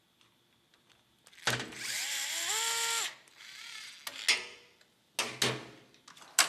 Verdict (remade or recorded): recorded